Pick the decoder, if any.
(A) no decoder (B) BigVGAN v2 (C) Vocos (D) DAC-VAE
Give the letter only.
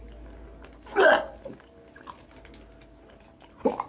A